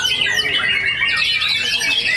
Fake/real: real